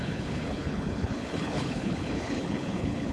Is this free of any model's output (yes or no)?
no